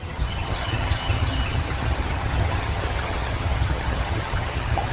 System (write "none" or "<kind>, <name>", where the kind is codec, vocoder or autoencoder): vocoder, HiFi-GAN